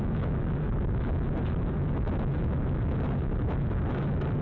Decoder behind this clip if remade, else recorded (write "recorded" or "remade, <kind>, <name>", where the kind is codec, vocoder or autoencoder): remade, autoencoder, DAC-VAE